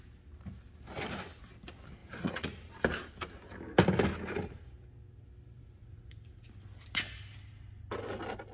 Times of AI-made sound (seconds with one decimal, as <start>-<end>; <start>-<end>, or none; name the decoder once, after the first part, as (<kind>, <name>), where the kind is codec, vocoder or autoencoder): 2.0-2.7 (vocoder, Vocos); 5.8-6.5